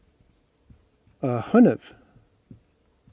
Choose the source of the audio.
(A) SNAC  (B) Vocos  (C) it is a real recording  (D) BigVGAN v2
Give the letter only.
C